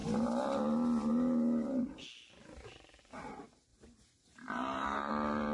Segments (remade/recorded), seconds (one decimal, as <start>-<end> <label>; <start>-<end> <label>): 0.0-3.7 recorded; 3.7-5.1 remade; 5.1-5.5 recorded